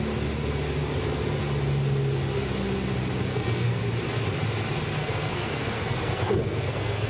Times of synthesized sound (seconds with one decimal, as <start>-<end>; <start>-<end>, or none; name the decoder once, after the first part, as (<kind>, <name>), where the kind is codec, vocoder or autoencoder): 3.3-3.8 (codec, SNAC); 5.0-7.1